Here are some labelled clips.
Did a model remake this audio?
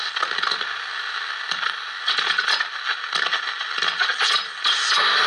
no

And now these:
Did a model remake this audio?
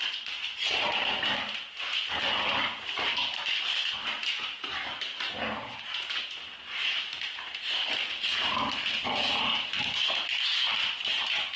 no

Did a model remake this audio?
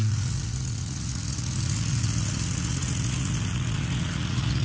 yes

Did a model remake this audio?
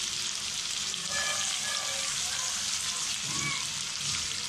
no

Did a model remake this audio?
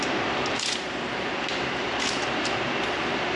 yes